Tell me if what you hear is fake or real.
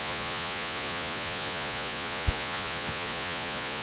fake